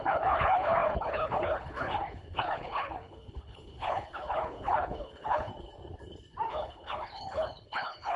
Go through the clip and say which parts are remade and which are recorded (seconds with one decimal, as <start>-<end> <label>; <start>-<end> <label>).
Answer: 0.0-5.5 remade; 5.5-6.5 recorded; 6.5-8.2 remade